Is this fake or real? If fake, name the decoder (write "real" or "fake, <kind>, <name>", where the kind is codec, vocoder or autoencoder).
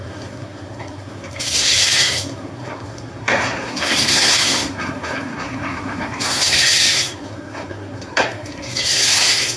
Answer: fake, codec, SNAC